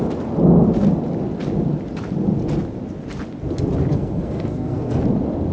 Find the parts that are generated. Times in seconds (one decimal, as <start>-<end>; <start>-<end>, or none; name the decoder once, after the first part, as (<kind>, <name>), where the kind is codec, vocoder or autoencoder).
3.9-5.0 (codec, SNAC)